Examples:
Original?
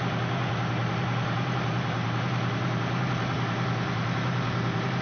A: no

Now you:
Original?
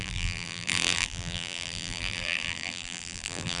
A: no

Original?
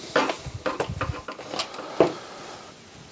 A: yes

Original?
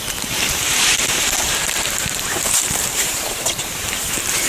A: no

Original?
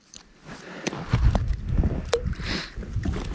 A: no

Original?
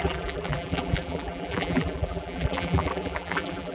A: no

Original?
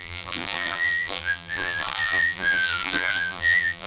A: no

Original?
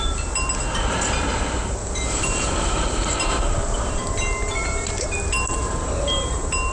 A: no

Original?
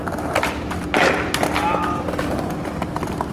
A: yes